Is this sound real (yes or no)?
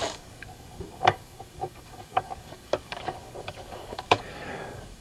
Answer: no